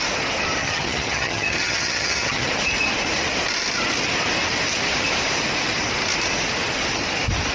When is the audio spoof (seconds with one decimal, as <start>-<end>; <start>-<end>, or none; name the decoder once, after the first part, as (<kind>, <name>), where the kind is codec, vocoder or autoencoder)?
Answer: 0.6-2.5 (vocoder, HiFi-GAN)